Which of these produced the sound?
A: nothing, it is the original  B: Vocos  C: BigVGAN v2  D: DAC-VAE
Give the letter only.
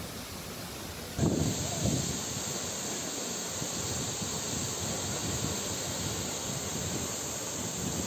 A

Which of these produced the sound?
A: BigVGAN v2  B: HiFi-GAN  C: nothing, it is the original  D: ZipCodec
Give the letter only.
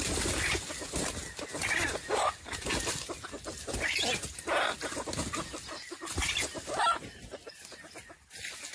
C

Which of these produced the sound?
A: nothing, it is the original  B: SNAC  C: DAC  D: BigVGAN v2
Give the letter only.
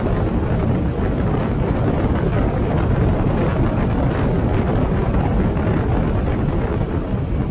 A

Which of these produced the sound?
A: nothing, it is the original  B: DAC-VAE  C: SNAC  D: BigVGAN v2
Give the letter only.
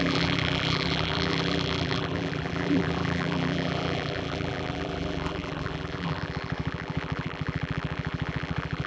D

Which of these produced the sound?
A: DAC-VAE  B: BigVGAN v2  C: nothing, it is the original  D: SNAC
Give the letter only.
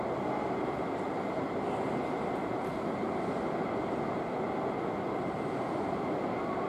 C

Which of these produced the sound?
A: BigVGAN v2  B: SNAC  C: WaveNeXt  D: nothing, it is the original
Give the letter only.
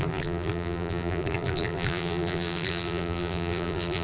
A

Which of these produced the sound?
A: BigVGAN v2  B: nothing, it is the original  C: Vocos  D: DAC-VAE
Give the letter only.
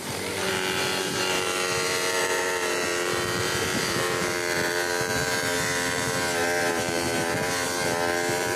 A